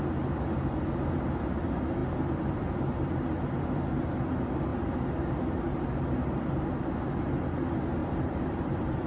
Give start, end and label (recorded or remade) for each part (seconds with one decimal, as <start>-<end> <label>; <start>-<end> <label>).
0.0-8.0 recorded; 8.0-9.1 remade